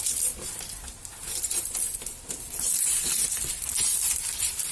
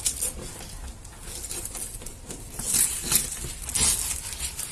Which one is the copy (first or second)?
first